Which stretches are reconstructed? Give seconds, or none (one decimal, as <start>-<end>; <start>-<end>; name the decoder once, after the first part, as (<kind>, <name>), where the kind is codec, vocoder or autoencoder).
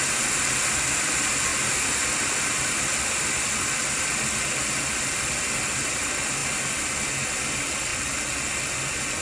none